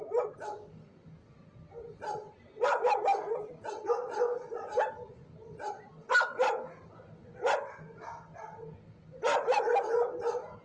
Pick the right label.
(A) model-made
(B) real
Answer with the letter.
B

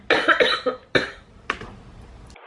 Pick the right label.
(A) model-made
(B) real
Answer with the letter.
B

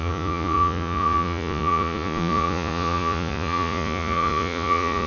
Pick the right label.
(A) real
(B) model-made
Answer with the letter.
B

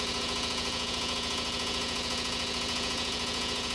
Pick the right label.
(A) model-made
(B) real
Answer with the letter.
A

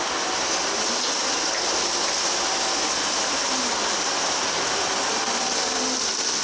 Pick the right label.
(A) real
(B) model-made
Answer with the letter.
A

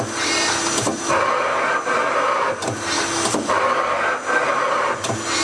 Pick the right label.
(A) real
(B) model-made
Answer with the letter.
A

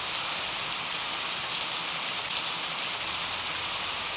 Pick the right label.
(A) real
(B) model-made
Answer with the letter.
A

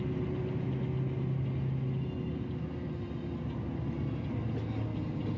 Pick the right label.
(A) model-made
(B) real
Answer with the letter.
B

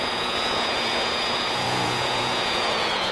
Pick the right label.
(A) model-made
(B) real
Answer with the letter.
A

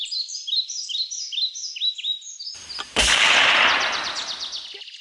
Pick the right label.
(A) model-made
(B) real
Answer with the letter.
B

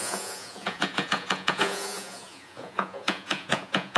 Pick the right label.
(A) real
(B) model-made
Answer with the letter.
B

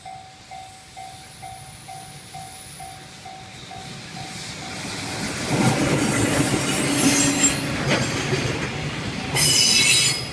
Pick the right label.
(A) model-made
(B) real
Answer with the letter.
B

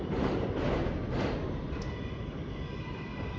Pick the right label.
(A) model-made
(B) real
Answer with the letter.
B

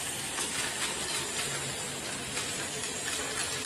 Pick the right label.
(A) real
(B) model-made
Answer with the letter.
A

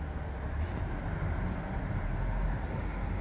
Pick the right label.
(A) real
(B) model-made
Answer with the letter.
A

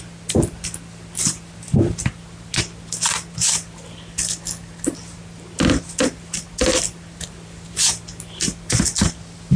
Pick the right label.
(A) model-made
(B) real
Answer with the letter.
B